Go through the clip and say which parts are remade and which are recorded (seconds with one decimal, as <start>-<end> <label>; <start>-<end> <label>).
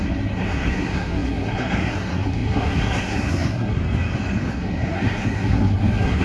0.0-3.8 remade; 3.8-4.5 recorded; 4.5-6.2 remade